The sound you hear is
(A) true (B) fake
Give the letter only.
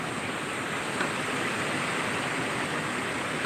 A